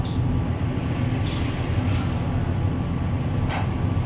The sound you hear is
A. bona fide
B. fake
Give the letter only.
A